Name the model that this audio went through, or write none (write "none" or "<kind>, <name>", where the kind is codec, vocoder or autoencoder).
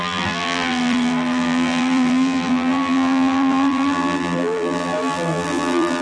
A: vocoder, BigVGAN v2